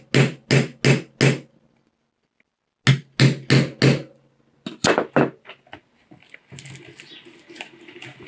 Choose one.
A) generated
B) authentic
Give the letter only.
B